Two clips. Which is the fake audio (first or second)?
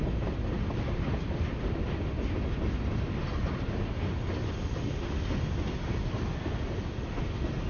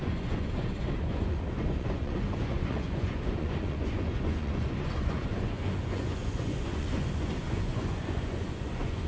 second